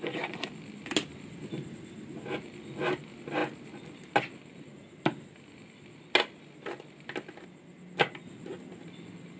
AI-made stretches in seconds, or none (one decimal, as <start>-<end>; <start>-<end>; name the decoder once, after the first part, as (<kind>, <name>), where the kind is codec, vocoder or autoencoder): none